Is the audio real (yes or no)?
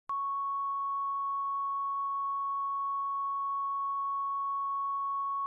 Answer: yes